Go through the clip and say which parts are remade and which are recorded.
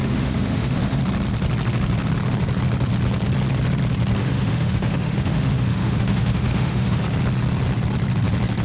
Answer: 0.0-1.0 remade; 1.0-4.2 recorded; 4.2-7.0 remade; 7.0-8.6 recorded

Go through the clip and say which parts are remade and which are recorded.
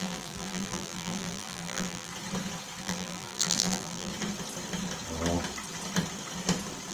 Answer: 0.0-2.1 remade; 2.1-2.8 recorded; 2.8-4.1 remade; 4.1-6.9 recorded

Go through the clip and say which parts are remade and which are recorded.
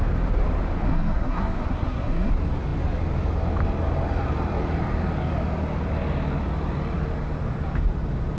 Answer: 0.0-0.8 recorded; 0.8-2.3 remade; 2.3-8.4 recorded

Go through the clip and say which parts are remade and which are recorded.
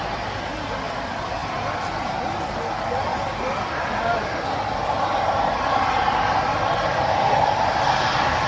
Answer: 0.0-8.5 recorded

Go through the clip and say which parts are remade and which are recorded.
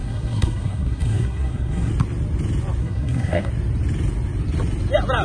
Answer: 0.0-1.9 remade; 1.9-2.8 recorded; 2.8-3.5 remade; 3.5-5.2 recorded